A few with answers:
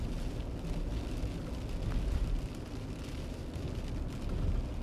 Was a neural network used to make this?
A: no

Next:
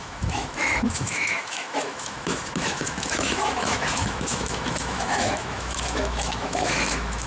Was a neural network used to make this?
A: yes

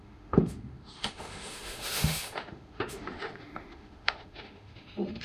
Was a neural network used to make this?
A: yes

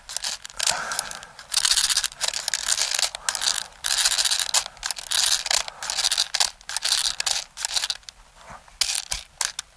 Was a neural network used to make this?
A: no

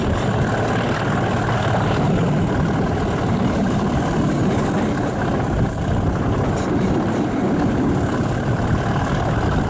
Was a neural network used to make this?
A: no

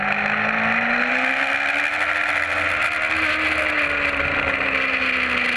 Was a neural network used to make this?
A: no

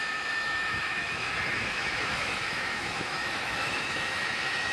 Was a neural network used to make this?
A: yes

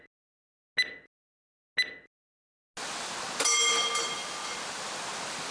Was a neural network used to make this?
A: no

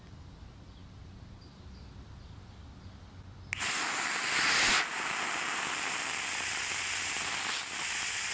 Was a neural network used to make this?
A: no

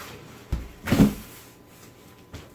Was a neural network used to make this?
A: no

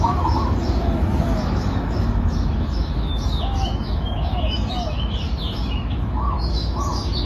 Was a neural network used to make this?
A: yes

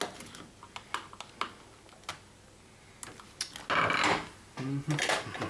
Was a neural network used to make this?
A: no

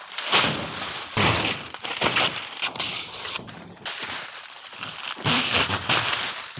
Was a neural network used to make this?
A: no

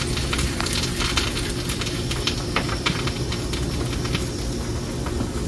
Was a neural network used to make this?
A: no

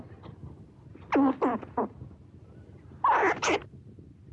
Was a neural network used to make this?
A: no